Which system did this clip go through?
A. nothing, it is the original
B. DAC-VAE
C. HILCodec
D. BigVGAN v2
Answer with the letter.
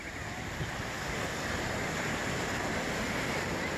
A